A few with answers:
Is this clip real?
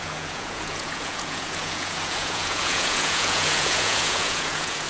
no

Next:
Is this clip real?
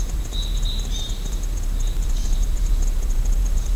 no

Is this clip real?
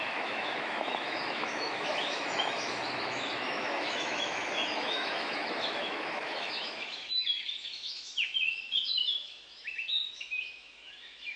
no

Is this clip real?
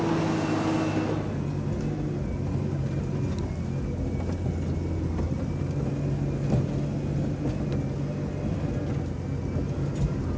yes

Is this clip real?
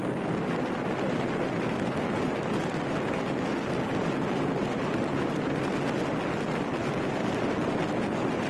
yes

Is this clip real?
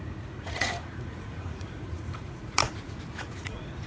no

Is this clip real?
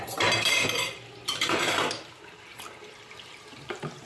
no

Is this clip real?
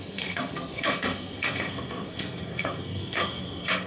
no